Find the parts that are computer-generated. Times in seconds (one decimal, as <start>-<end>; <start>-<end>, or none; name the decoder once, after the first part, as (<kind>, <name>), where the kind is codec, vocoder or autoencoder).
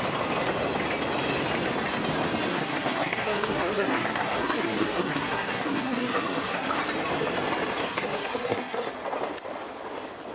2.5-6.7 (codec, SNAC); 7.9-8.9